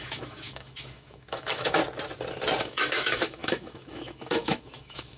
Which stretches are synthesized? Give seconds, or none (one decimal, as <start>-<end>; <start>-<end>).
0.0-1.8; 2.6-5.2